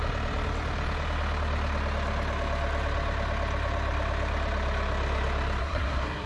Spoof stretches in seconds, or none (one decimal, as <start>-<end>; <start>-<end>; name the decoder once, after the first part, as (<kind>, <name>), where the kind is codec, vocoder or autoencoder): 5.6-6.3 (codec, SNAC)